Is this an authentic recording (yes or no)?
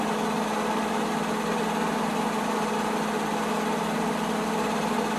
yes